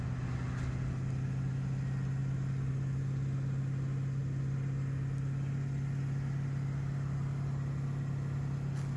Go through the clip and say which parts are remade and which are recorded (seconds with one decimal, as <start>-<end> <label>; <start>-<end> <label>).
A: 0.0-9.0 recorded